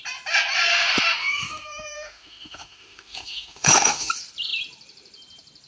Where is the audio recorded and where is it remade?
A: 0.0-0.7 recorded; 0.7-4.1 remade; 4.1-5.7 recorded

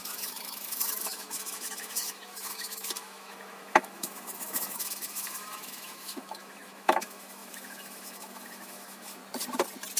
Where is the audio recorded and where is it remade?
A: 0.0-9.2 remade; 9.2-10.0 recorded

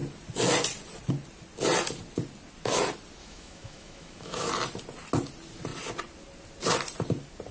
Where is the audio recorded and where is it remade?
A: 0.0-3.2 recorded; 3.2-4.5 remade; 4.5-7.5 recorded

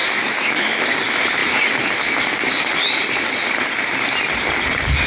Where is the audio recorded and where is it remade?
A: 0.0-0.9 remade; 0.9-5.1 recorded